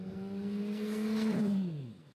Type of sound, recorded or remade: remade